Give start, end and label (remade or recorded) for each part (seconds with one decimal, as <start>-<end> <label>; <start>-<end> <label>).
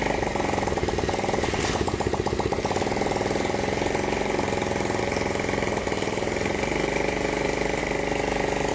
0.0-7.8 remade; 7.8-8.7 recorded